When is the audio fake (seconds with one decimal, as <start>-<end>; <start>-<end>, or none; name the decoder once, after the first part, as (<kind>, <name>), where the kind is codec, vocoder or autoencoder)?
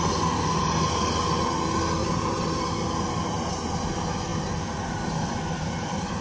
2.0-2.6 (vocoder, BigVGAN v2)